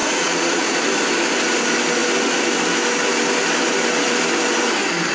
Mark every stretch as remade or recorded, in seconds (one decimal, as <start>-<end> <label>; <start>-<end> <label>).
0.0-0.8 remade; 0.8-5.1 recorded